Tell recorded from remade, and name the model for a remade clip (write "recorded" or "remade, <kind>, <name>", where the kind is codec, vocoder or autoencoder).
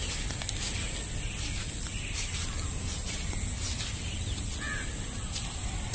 recorded